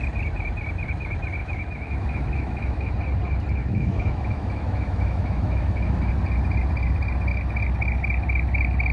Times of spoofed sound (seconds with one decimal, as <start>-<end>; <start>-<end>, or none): 1.4-2.9; 3.6-6.1